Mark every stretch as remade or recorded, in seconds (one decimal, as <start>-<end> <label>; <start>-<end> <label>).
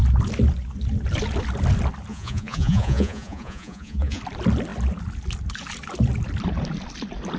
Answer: 0.0-2.1 recorded; 2.1-4.2 remade; 4.2-7.4 recorded